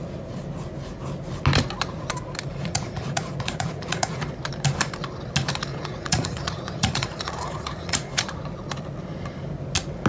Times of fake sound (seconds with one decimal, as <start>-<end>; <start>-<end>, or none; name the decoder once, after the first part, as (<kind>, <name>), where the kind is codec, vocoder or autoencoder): 2.5-4.2 (vocoder, Vocos); 5.7-8.2